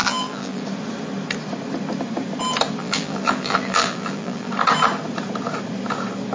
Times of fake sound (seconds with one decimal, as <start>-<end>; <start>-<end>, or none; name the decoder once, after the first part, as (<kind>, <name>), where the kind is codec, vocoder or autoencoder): 0.0-0.6 (vocoder, BigVGAN v2); 2.8-4.5